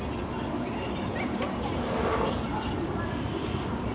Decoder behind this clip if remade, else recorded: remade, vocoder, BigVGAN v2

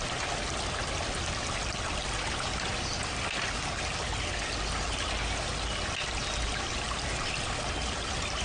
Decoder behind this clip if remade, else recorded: recorded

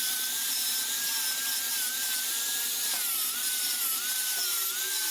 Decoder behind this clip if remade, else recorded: remade, vocoder, BigVGAN v2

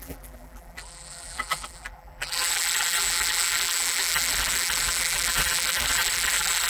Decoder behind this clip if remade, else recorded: remade, vocoder, BigVGAN v2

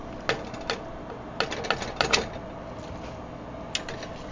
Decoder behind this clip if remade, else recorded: recorded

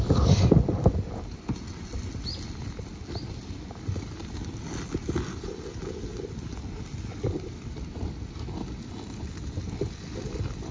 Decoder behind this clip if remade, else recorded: recorded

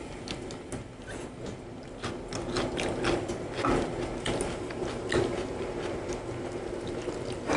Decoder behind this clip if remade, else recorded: recorded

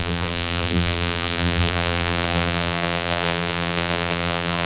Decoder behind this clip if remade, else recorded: remade, vocoder, BigVGAN v2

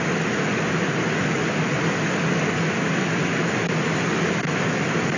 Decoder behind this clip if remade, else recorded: recorded